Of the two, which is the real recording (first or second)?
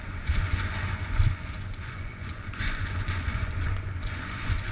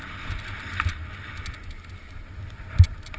second